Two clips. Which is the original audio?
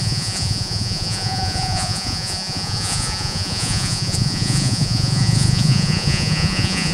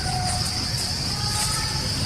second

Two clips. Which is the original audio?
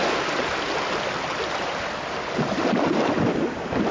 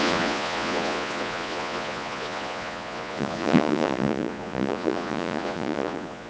first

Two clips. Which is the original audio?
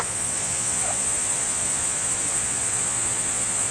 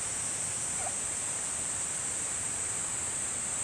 second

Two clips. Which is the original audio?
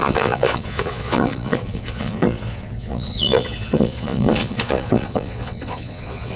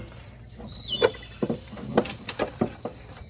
second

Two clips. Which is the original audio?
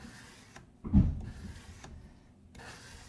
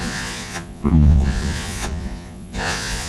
first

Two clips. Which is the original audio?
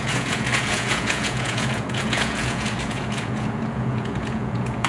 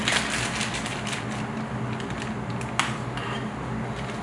second